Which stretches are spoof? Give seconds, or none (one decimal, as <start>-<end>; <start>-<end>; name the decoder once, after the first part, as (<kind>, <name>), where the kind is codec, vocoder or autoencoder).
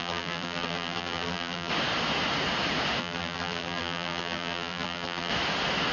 0.0-1.7 (vocoder, BigVGAN v2); 3.0-5.3